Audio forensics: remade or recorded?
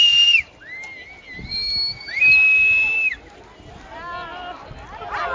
recorded